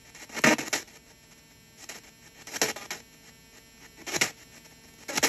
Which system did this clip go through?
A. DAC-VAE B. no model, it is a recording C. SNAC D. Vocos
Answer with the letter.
B